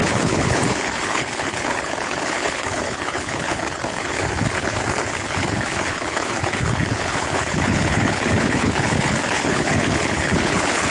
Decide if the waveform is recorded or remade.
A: remade